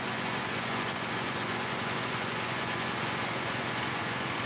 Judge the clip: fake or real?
fake